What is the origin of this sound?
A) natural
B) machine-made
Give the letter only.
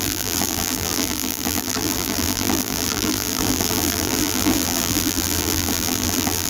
B